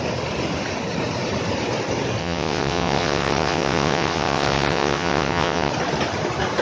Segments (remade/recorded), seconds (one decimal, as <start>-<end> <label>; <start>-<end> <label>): 0.0-2.2 recorded; 2.2-5.7 remade; 5.7-6.6 recorded